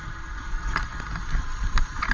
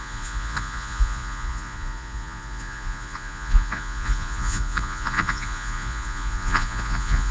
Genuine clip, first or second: first